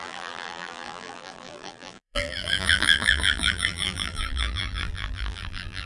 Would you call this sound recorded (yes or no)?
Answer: no